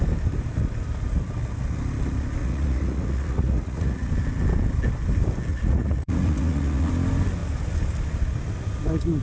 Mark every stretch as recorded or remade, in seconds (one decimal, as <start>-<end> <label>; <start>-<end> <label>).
0.0-2.4 recorded; 2.4-4.1 remade; 4.1-5.5 recorded; 5.5-6.9 remade; 6.9-9.2 recorded